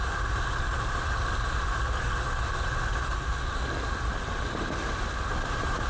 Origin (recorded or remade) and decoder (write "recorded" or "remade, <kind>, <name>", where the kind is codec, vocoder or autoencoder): recorded